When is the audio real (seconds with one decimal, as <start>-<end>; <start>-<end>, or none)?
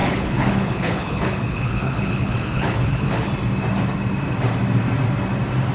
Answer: 3.3-5.7